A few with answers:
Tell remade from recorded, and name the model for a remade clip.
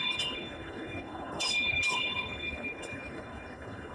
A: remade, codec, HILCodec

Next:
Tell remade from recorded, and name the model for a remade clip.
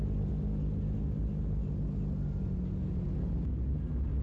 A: recorded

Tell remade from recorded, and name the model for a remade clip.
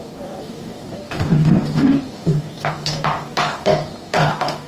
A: remade, codec, DAC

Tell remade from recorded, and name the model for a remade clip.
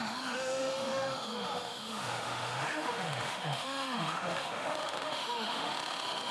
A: remade, autoencoder, DAC-VAE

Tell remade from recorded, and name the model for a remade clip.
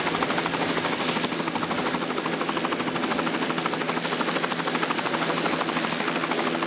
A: recorded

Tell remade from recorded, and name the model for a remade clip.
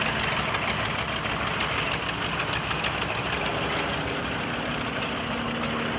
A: recorded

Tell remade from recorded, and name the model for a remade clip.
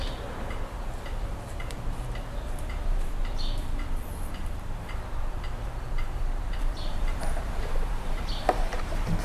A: remade, vocoder, BigVGAN v2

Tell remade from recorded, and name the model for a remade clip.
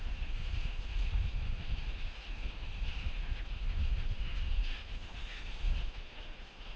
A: remade, autoencoder, DAC-VAE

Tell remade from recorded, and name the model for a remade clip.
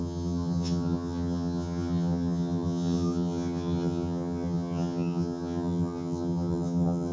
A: remade, vocoder, HiFi-GAN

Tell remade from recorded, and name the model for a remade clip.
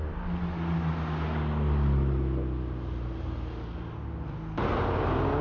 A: recorded